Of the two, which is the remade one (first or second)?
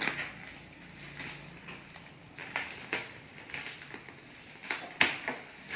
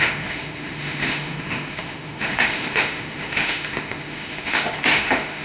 second